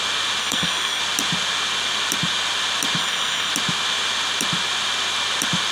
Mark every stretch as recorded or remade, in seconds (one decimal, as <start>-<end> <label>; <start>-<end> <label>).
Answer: 0.0-0.4 recorded; 0.4-1.0 remade; 1.0-3.0 recorded; 3.0-3.5 remade; 3.5-5.7 recorded